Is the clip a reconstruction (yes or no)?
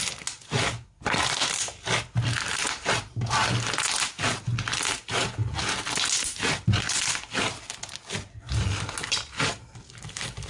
no